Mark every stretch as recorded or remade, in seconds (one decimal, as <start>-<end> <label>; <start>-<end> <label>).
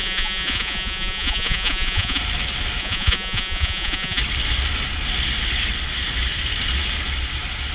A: 0.0-2.2 remade; 2.2-2.8 recorded; 2.8-4.2 remade; 4.2-7.7 recorded